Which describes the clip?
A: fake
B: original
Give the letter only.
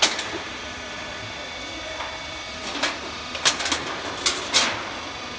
B